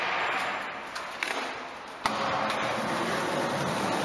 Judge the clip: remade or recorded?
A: recorded